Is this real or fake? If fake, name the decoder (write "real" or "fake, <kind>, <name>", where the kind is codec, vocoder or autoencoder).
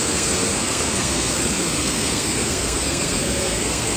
fake, codec, SNAC